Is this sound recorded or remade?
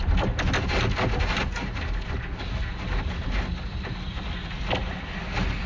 recorded